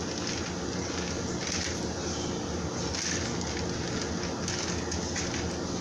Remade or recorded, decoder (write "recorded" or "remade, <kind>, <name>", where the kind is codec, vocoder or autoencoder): recorded